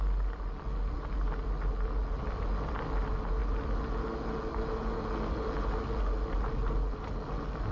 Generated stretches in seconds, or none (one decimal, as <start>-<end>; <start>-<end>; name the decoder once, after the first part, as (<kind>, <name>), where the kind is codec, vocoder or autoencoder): none